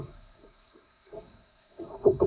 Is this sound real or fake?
fake